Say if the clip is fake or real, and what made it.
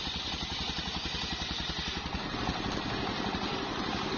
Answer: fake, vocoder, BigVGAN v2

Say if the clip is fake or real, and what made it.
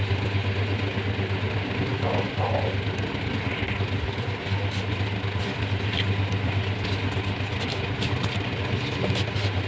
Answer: real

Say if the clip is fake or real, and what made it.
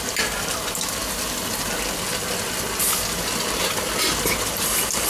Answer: real